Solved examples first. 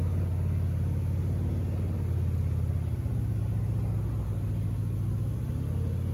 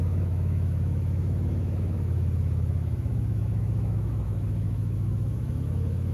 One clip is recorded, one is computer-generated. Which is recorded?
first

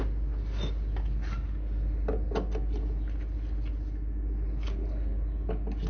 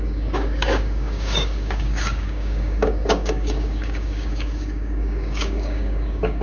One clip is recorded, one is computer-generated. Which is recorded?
first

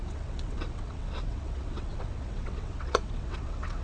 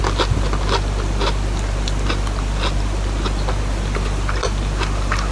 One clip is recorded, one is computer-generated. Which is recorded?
second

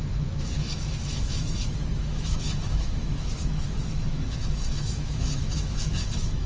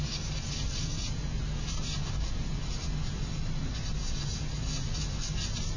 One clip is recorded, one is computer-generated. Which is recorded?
second